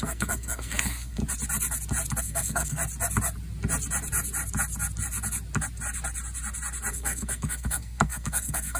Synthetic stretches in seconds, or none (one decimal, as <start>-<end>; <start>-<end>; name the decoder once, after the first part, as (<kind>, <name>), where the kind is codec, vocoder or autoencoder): 0.0-1.2 (codec, SNAC); 2.2-2.8; 6.9-8.8